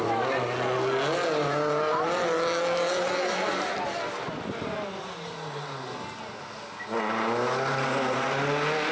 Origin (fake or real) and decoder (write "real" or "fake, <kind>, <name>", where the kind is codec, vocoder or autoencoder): real